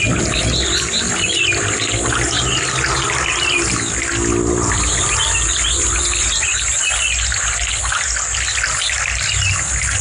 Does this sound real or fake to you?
real